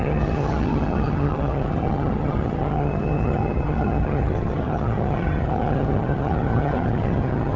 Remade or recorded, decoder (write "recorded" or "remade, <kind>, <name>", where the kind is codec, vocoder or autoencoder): remade, vocoder, HiFi-GAN